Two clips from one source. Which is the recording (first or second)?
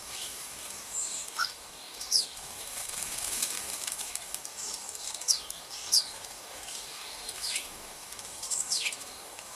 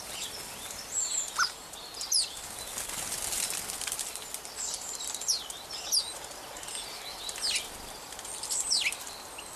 second